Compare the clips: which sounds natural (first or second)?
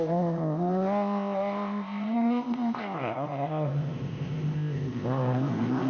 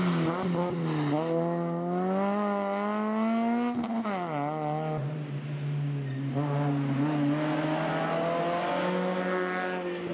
second